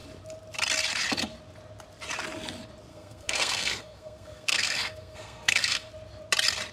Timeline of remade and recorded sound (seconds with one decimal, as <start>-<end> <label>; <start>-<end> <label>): 0.0-2.9 recorded; 2.9-5.9 remade; 5.9-6.7 recorded